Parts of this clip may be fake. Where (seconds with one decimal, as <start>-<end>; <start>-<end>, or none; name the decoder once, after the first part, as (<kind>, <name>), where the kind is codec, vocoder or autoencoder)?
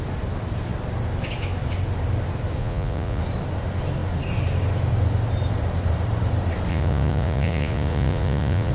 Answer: 2.6-3.2 (vocoder, Vocos); 6.7-8.7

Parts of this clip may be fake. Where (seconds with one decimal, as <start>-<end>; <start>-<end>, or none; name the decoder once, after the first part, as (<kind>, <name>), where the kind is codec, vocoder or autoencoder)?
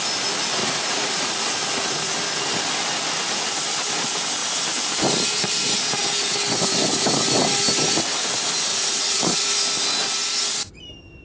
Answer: 0.6-1.3 (vocoder, Vocos); 8.7-9.6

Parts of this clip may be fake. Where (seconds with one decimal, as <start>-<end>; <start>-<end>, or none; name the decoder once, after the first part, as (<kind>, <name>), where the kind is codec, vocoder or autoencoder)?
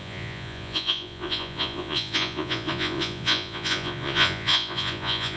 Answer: 0.0-5.4 (vocoder, Vocos)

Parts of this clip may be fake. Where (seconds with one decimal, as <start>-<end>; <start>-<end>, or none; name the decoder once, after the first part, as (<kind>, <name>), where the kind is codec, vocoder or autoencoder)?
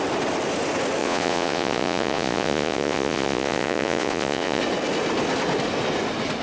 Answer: 1.0-4.6 (vocoder, Vocos)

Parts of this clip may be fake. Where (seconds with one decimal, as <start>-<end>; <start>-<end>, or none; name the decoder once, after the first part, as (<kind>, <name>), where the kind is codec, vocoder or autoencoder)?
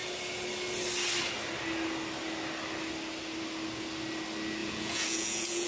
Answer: 4.6-5.7 (vocoder, Vocos)